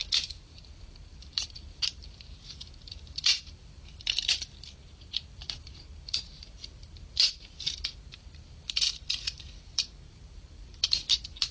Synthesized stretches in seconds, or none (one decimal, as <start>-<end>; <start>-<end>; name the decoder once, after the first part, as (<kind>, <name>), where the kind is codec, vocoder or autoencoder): 0.0-11.5 (vocoder, BigVGAN v2)